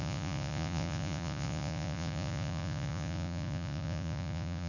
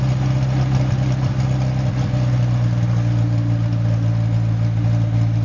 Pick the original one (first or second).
second